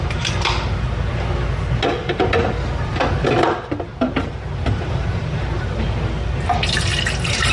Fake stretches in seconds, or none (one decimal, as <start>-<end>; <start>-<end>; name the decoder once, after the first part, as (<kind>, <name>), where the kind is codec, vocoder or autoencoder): 3.9-5.6 (vocoder, BigVGAN v2)